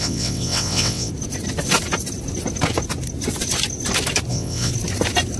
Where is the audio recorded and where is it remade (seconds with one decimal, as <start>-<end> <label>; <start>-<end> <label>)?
0.0-1.1 remade; 1.1-4.3 recorded; 4.3-4.7 remade; 4.7-5.4 recorded